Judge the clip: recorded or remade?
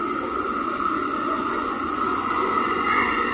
remade